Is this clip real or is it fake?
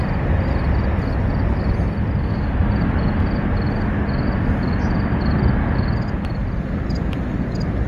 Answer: real